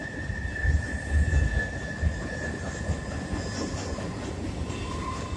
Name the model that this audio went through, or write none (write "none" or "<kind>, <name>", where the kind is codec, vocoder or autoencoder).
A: none